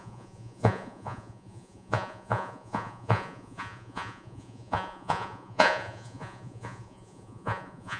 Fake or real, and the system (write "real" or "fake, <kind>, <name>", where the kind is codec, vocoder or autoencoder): fake, vocoder, Vocos